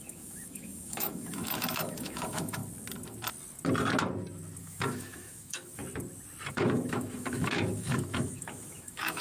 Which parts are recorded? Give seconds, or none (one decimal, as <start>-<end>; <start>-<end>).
2.6-4.6; 5.8-6.5